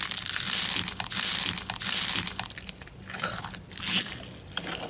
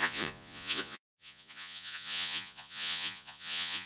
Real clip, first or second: first